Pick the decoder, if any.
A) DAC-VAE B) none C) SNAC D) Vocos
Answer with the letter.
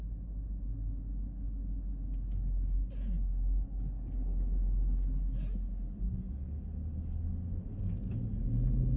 B